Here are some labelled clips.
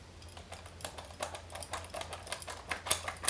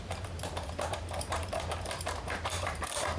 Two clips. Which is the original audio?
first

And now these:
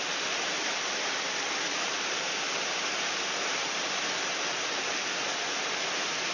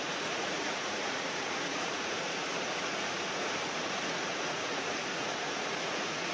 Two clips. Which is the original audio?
first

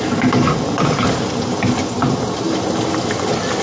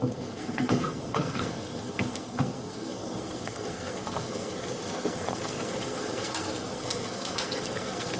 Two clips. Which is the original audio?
first